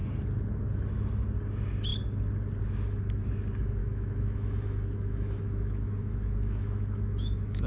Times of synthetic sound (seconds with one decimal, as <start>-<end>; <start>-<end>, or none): 3.8-7.7